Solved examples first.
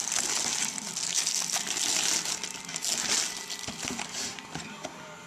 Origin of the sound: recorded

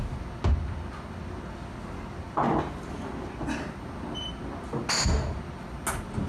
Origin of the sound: recorded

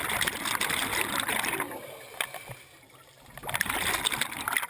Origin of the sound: recorded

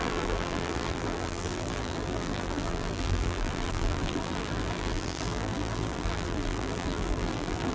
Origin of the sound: remade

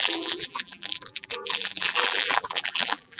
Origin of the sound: remade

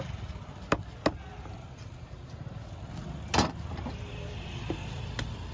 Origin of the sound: recorded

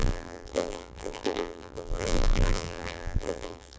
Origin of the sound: remade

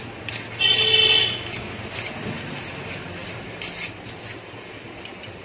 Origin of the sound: remade